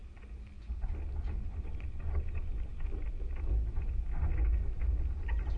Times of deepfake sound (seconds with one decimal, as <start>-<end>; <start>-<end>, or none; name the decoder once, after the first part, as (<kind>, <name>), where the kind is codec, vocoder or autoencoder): 2.7-3.5 (vocoder, BigVGAN v2)